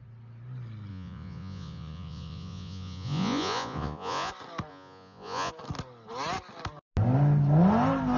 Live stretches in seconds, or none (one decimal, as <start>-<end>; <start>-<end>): 0.0-0.9; 4.3-4.7; 5.5-8.2